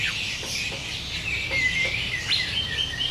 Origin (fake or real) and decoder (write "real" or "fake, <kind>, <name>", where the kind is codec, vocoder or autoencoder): real